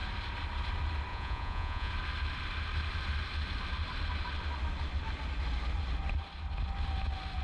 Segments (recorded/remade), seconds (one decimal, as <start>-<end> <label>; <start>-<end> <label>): 0.0-1.1 recorded; 1.1-1.9 remade; 1.9-7.4 recorded